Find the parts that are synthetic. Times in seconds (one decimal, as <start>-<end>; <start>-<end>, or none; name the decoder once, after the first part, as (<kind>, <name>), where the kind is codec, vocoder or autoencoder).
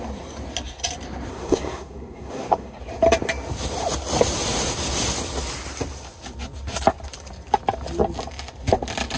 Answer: 1.3-2.8 (codec, SNAC)